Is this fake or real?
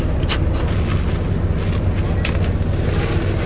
real